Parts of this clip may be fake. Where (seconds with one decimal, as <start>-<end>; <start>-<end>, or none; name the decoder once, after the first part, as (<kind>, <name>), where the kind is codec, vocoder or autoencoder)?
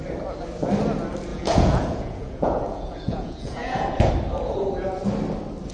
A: 1.3-4.1 (vocoder, Vocos)